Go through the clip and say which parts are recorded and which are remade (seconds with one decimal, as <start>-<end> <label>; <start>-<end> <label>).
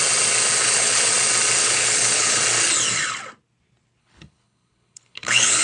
0.0-0.6 recorded; 0.6-1.1 remade; 1.1-1.6 recorded; 1.6-2.4 remade; 2.4-4.0 recorded; 4.0-5.6 remade